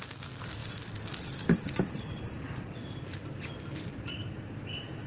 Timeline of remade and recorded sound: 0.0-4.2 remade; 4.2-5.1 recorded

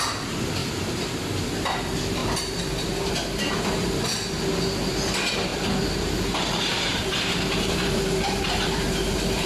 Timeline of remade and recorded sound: 0.0-2.2 recorded; 2.2-3.1 remade; 3.1-5.5 recorded; 5.5-9.5 remade

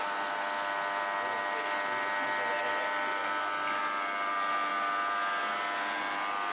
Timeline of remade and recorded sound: 0.0-3.2 recorded; 3.2-3.8 remade; 3.8-6.5 recorded

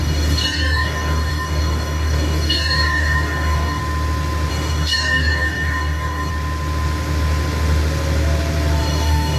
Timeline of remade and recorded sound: 0.0-3.8 remade; 3.8-4.5 recorded; 4.5-6.3 remade; 6.3-8.8 recorded; 8.8-9.4 remade

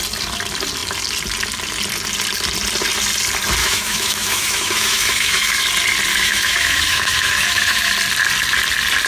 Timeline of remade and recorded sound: 0.0-3.6 recorded; 3.6-5.6 remade; 5.6-6.1 recorded; 6.1-7.9 remade; 7.9-9.1 recorded

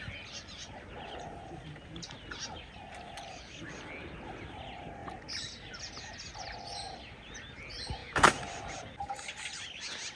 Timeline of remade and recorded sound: 0.0-10.2 recorded

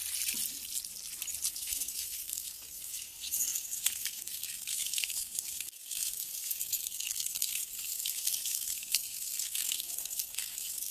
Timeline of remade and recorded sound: 0.0-1.5 recorded; 1.5-10.9 remade

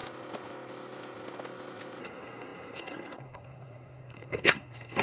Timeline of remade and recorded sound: 0.0-2.0 recorded; 2.0-5.0 remade